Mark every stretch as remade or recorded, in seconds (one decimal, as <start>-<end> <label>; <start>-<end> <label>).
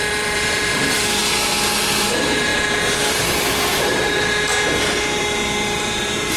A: 0.0-1.2 remade; 1.2-1.9 recorded; 1.9-4.5 remade; 4.5-5.2 recorded; 5.2-6.4 remade